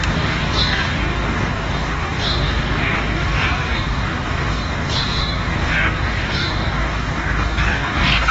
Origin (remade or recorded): remade